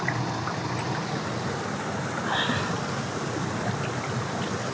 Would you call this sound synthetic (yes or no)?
no